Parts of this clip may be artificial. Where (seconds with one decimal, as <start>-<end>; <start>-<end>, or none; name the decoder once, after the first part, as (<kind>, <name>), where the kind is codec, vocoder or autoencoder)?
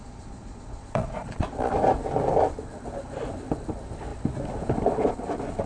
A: 0.0-1.7 (vocoder, Vocos)